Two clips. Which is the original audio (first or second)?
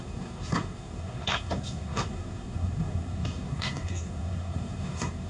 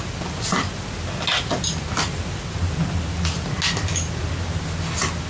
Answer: second